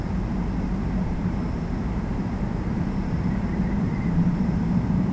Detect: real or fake fake